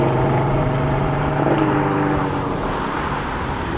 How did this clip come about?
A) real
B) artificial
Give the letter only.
B